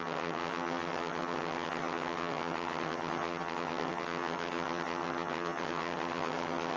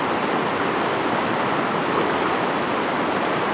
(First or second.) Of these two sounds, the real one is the second